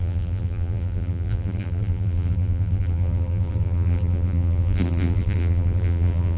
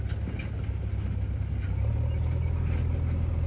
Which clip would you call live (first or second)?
second